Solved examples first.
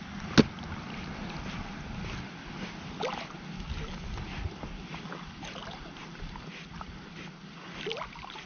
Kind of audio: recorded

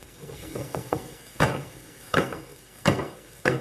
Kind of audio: remade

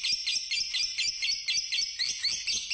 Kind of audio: recorded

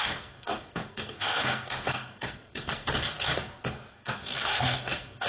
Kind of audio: remade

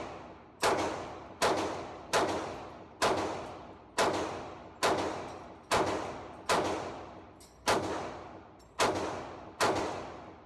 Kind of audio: recorded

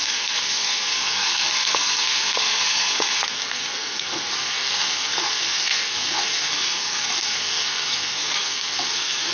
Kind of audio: remade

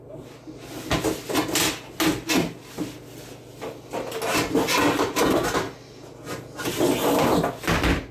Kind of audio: recorded